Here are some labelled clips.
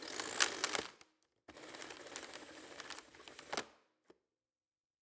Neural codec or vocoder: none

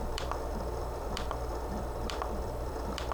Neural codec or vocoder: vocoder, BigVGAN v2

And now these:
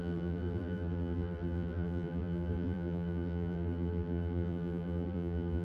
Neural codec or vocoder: vocoder, BigVGAN v2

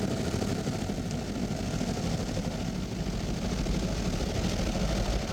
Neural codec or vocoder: none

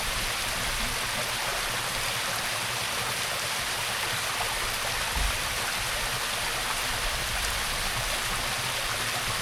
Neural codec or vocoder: none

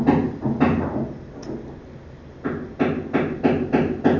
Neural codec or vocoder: none